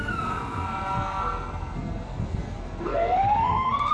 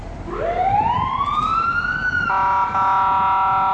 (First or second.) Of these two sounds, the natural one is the second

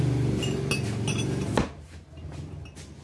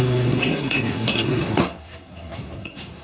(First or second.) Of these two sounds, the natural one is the first